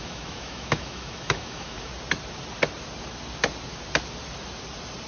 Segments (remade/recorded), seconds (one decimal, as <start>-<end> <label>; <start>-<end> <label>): 0.0-1.9 remade; 1.9-5.1 recorded